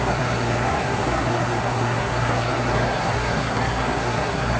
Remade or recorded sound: remade